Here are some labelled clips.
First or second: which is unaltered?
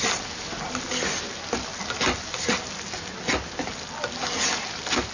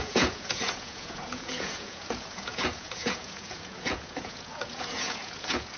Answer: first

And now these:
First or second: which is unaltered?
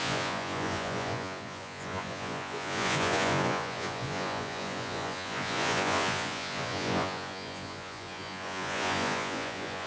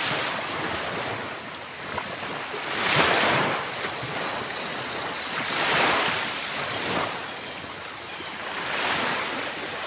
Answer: second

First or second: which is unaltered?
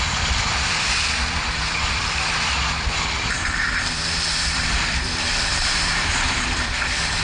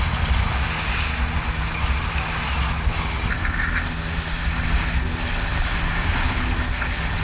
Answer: second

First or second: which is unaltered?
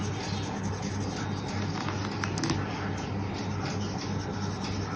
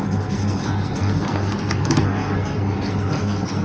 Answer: first